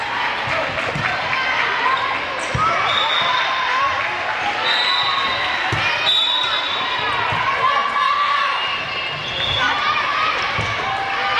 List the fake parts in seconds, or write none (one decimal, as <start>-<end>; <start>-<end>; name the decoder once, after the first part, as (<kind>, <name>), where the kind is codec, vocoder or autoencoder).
7.8-9.3 (vocoder, BigVGAN v2)